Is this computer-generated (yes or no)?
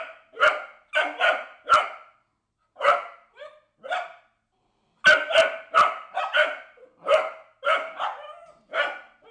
no